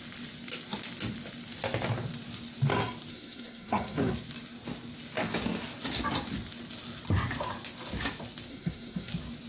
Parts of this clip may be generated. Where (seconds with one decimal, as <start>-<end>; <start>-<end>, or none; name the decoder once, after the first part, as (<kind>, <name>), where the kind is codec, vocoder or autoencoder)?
3.1-4.1 (codec, SNAC); 8.5-9.1